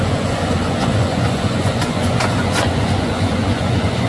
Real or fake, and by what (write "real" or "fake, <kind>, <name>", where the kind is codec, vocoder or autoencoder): fake, vocoder, Vocos